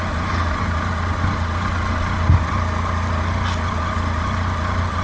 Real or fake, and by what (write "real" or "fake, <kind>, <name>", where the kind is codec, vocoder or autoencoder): real